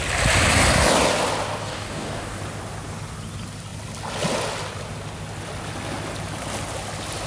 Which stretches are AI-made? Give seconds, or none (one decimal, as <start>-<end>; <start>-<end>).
1.6-2.4